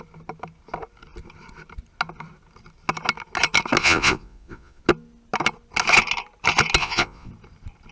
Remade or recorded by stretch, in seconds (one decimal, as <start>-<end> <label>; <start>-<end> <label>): 0.0-3.8 recorded; 3.8-4.8 remade; 4.8-6.8 recorded; 6.8-7.3 remade; 7.3-7.9 recorded